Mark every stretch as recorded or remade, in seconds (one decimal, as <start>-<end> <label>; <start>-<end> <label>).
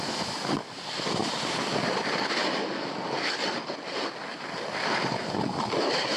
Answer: 0.0-1.2 recorded; 1.2-1.7 remade; 1.7-6.2 recorded